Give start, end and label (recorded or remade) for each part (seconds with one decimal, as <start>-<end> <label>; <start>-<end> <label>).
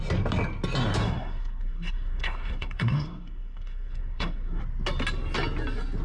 0.0-1.0 recorded; 1.0-4.6 remade; 4.6-6.0 recorded